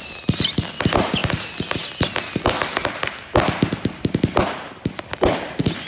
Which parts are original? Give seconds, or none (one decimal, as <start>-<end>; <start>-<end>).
0.0-5.9